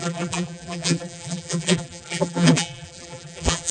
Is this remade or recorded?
remade